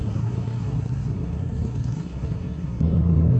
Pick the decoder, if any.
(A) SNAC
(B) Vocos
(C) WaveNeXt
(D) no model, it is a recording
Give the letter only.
A